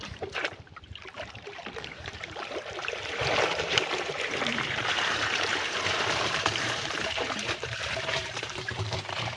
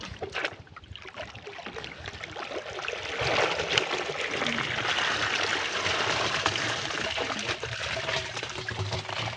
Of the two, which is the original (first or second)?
second